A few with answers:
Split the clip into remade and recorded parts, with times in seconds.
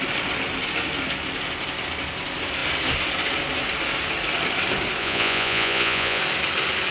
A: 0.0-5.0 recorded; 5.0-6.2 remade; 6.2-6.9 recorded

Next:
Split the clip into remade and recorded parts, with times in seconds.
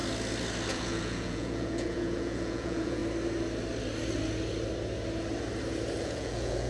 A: 0.0-0.7 recorded; 0.7-3.0 remade; 3.0-6.0 recorded; 6.0-6.7 remade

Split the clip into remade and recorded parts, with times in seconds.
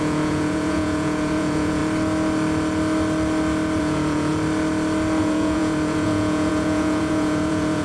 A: 0.0-1.8 remade; 1.8-3.8 recorded; 3.8-4.3 remade; 4.3-5.2 recorded; 5.2-7.8 remade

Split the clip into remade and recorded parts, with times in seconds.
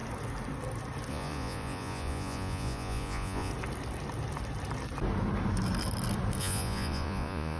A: 0.0-1.1 recorded; 1.1-3.5 remade; 3.5-6.4 recorded; 6.4-7.6 remade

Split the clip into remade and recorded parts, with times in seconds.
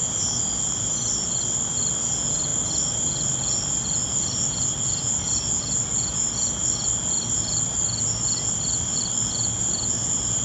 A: 0.0-10.4 recorded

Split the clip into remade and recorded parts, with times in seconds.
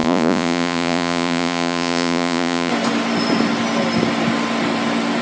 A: 0.0-2.7 remade; 2.7-5.2 recorded